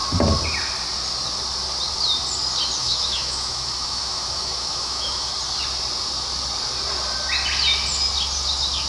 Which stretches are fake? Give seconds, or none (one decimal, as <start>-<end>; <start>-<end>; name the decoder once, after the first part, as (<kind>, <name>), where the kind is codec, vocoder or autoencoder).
2.8-5.3 (autoencoder, DAC-VAE)